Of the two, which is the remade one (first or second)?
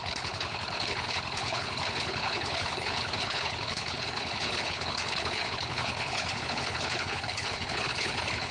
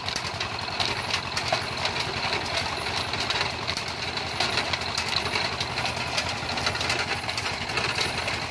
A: first